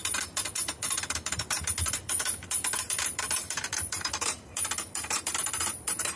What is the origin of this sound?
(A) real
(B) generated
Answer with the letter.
B